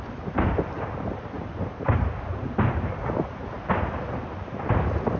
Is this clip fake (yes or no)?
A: no